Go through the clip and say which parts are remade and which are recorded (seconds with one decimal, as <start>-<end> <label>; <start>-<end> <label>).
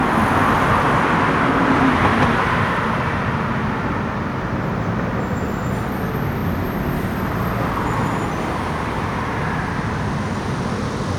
0.0-6.4 recorded; 6.4-8.3 remade; 8.3-11.2 recorded